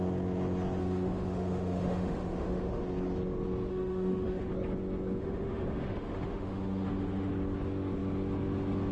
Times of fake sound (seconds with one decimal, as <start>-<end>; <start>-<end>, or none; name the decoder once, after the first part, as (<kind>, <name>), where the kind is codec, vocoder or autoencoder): 0.8-2.8 (autoencoder, DAC-VAE); 3.7-4.5; 5.2-7.3